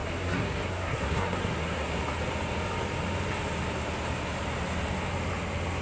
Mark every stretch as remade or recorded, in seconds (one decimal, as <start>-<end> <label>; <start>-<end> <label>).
0.0-2.0 remade; 2.0-5.8 recorded